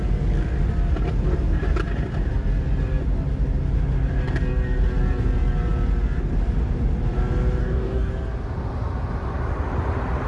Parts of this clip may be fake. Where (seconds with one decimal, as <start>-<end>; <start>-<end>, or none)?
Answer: 7.6-8.1